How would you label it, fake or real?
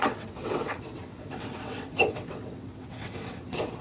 fake